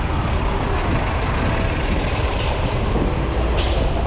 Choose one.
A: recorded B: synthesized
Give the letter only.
A